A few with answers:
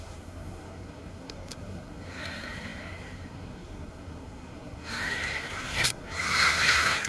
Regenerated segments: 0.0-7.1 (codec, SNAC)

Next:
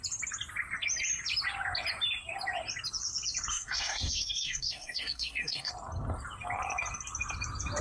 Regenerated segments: 3.5-5.7 (codec, SNAC)

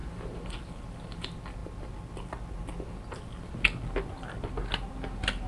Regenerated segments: none

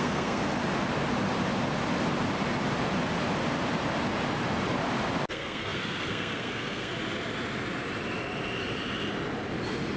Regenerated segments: 0.0-0.4 (codec, SNAC); 5.3-6.9

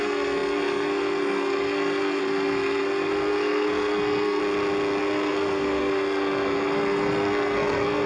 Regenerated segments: 0.0-4.4 (codec, SNAC); 5.0-8.1

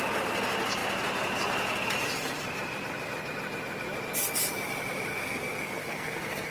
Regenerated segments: 5.1-6.5 (codec, SNAC)